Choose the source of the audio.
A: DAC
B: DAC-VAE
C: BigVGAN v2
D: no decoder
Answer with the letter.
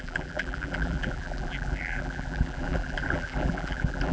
C